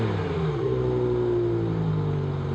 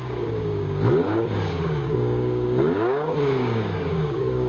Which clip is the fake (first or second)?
second